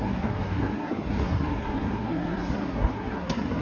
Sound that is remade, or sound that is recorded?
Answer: remade